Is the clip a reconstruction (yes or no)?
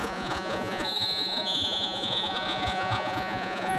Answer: yes